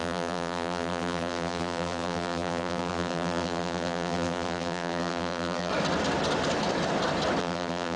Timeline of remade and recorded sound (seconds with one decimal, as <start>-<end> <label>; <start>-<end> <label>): 0.0-5.7 remade; 5.7-7.4 recorded; 7.4-8.0 remade